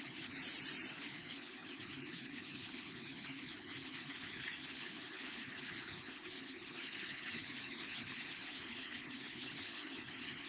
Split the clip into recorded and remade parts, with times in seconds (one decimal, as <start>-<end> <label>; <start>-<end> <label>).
0.0-0.4 remade; 0.4-0.9 recorded; 0.9-10.5 remade